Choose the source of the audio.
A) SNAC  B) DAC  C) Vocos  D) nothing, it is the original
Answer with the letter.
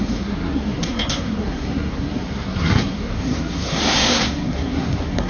A